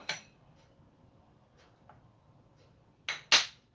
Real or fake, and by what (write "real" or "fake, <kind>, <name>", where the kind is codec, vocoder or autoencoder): real